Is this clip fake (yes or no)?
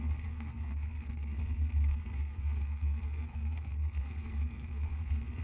yes